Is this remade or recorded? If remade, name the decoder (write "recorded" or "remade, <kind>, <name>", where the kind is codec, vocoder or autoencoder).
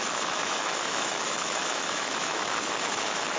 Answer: remade, autoencoder, DAC-VAE